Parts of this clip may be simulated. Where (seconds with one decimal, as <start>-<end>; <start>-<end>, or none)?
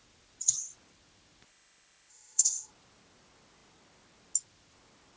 2.1-2.7